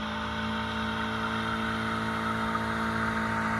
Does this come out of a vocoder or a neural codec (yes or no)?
no